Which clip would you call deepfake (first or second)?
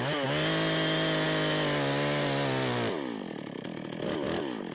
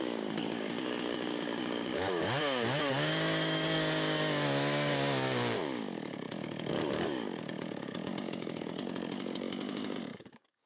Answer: second